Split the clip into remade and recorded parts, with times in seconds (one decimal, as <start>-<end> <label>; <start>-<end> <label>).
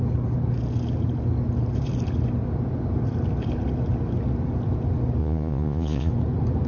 0.0-5.2 recorded; 5.2-6.1 remade; 6.1-6.7 recorded